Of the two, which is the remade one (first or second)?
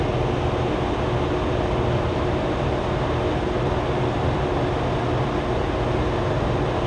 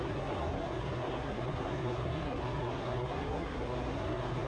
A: second